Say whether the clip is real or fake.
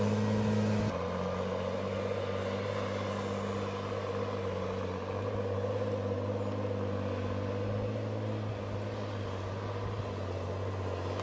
real